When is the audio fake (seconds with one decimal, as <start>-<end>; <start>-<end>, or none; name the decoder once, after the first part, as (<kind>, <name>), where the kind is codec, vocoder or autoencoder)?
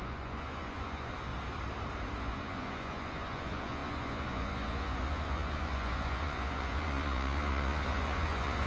0.0-1.3 (vocoder, Vocos); 2.2-8.7